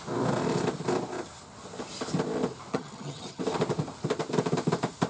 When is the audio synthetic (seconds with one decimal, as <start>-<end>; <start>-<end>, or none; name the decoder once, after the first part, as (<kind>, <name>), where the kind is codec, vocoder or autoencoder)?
2.7-3.4 (vocoder, HiFi-GAN)